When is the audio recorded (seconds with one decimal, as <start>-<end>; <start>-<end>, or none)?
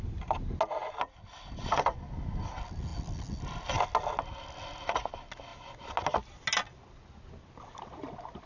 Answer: 0.0-8.5